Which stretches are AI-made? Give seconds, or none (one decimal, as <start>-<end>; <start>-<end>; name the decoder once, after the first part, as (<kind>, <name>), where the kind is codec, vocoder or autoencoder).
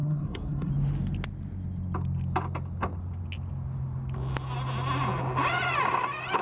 0.0-0.7 (codec, SNAC)